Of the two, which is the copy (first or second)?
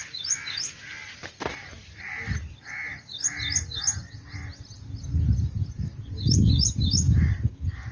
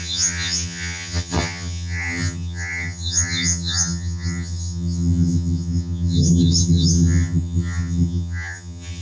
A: second